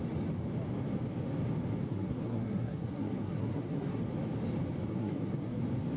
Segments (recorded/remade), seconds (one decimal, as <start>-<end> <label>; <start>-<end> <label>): 0.0-1.9 recorded; 1.9-4.0 remade; 4.0-4.9 recorded; 4.9-5.6 remade; 5.6-6.0 recorded